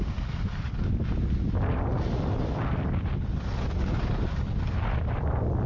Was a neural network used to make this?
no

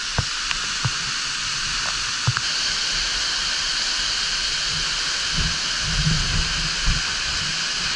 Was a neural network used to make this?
no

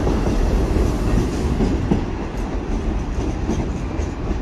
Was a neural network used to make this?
no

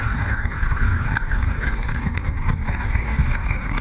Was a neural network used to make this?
yes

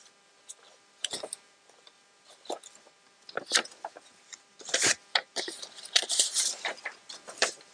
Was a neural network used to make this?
yes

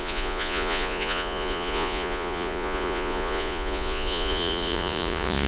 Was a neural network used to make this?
yes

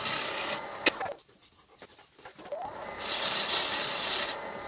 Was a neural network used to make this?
no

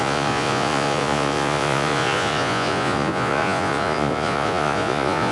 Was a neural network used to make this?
yes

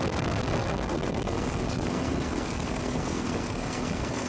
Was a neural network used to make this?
yes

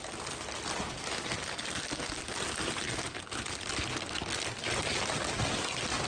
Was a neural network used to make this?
no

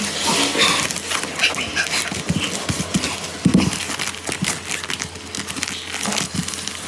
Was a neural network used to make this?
no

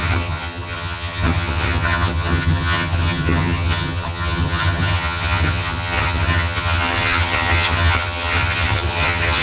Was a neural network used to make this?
yes